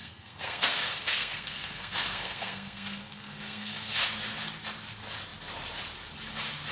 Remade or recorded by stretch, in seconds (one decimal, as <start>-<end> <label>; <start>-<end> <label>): 0.0-4.0 remade; 4.0-6.7 recorded